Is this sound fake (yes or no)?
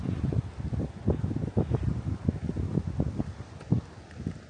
no